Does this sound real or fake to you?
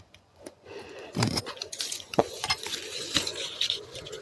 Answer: fake